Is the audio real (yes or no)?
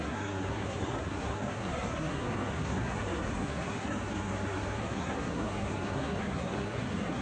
no